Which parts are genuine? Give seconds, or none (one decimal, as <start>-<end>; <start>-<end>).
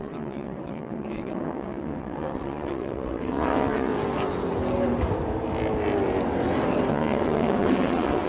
3.9-6.9